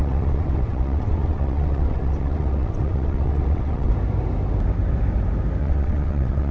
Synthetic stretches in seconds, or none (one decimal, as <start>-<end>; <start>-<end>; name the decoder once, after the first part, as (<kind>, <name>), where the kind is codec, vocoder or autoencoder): 0.0-3.9 (vocoder, WaveNeXt); 5.6-6.5